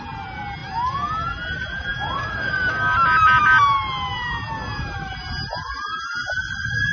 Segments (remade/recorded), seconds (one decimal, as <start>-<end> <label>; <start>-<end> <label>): 0.0-6.9 recorded